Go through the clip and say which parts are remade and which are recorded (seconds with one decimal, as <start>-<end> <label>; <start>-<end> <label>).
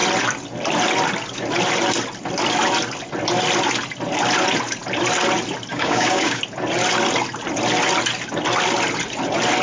0.0-5.7 recorded; 5.7-6.4 remade; 6.4-9.6 recorded